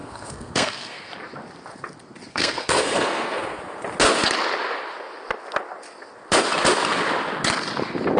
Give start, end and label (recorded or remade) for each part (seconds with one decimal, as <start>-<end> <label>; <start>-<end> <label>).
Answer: 0.0-1.1 remade; 1.1-2.3 recorded; 2.3-3.6 remade; 3.6-8.2 recorded